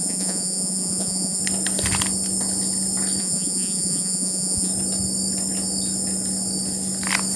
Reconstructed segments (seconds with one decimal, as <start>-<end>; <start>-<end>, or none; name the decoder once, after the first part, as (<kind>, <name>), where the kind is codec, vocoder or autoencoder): 0.0-1.4 (vocoder, Vocos); 3.2-4.7